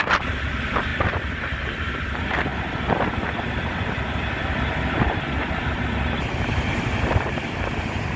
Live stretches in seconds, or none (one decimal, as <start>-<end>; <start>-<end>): 0.0-8.2